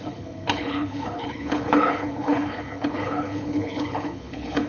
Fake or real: fake